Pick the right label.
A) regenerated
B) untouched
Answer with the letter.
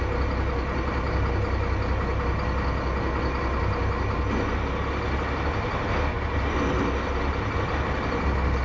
B